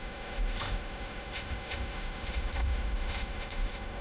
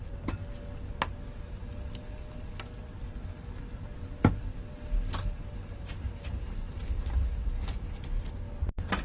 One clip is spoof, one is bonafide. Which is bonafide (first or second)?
second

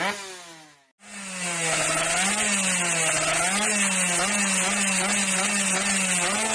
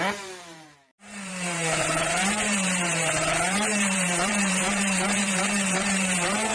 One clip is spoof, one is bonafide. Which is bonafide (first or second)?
first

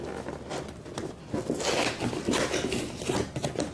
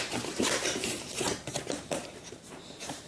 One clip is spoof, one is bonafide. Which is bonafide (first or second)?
first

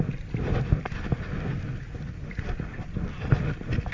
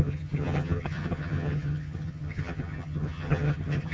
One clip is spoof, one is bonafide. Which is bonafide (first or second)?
first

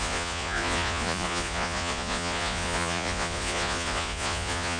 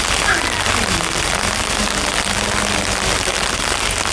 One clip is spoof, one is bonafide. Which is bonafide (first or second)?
second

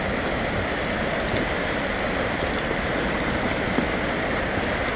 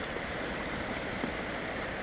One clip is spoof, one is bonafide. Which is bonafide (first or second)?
first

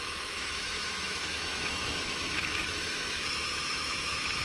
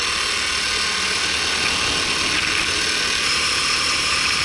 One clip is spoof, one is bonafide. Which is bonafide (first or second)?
second